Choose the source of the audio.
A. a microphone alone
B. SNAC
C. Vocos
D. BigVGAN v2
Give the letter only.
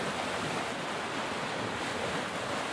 A